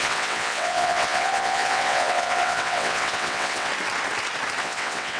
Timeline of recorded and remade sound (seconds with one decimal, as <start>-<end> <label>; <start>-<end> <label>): 0.0-3.7 remade; 3.7-4.6 recorded; 4.6-5.2 remade